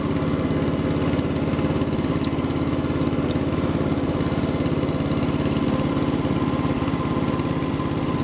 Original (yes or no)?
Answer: yes